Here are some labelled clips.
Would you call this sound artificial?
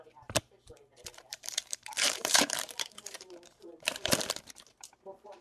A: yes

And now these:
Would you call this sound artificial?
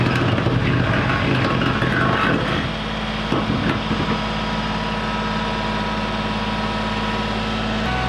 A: no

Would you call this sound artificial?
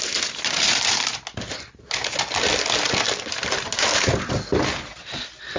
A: no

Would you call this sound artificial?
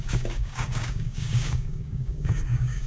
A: yes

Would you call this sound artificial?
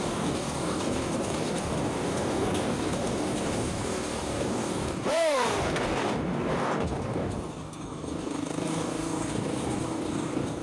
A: yes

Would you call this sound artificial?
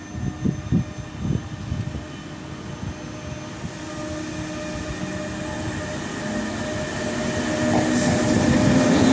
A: no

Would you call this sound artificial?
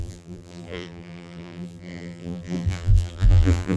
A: yes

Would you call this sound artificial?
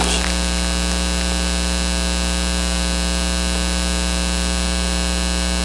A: no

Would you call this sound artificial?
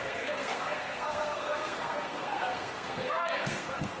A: yes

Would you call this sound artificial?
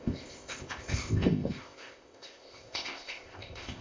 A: yes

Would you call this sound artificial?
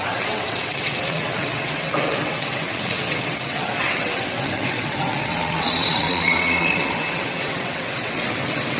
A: yes